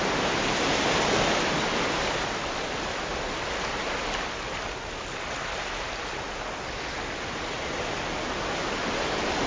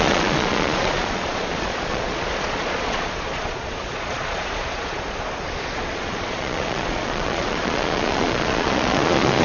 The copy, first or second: second